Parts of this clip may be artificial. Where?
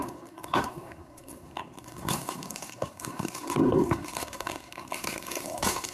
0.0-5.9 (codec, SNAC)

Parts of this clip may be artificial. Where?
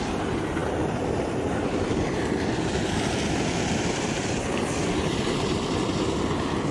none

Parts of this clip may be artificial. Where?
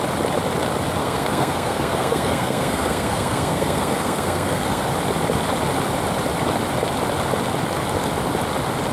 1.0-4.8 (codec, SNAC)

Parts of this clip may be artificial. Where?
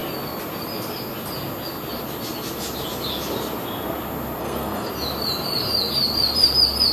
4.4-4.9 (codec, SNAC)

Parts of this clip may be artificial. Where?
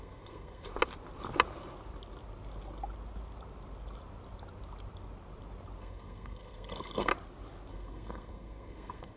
0.0-0.7 (codec, SNAC); 5.8-7.1; 7.7-9.2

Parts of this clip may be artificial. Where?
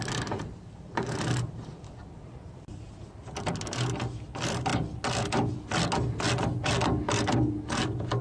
none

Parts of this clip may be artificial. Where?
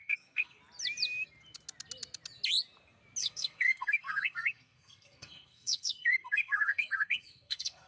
0.0-0.6 (codec, SNAC); 3.2-7.9